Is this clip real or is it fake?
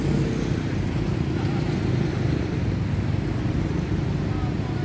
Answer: real